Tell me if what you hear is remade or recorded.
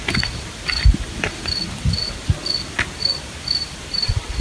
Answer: remade